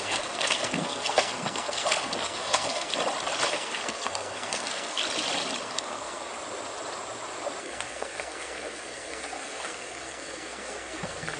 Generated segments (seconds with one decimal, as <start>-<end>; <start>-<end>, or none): 0.0-2.9; 3.5-5.0; 5.6-6.3; 7.6-11.4